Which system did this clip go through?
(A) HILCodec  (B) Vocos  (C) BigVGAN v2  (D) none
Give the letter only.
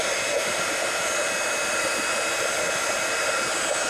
D